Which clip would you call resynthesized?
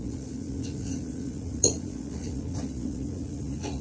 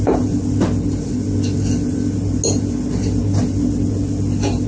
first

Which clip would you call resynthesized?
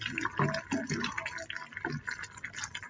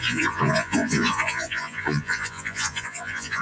second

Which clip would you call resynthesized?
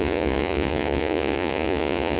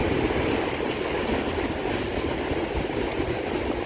first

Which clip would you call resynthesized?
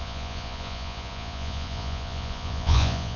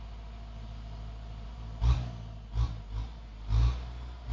first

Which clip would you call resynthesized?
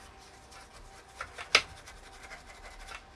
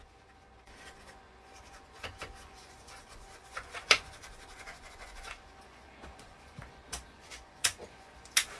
second